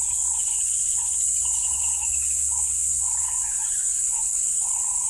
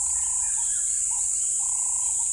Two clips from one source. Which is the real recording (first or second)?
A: second